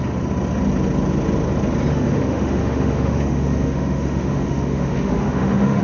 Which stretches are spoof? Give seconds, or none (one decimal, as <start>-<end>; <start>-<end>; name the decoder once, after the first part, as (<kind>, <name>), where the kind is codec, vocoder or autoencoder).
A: 1.9-5.8 (autoencoder, DAC-VAE)